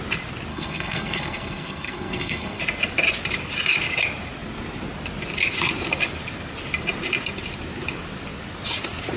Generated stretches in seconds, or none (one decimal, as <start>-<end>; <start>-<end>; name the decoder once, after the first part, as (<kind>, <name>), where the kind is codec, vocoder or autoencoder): 0.5-2.6 (codec, SNAC)